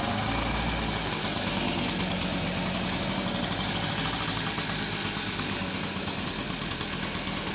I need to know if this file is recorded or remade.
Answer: recorded